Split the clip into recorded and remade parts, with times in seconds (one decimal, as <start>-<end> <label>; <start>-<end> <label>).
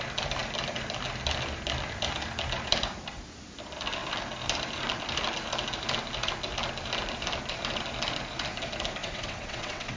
0.0-9.0 recorded; 9.0-10.0 remade